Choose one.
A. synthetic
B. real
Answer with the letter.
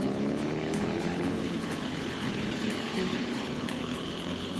A